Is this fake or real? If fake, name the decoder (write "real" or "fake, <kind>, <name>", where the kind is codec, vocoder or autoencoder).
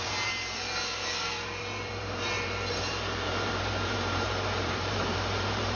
fake, vocoder, BigVGAN v2